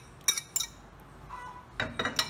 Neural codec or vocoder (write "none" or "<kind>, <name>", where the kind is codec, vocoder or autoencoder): none